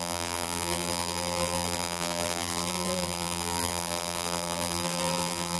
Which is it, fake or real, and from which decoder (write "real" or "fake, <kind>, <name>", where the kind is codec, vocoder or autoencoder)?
fake, vocoder, BigVGAN v2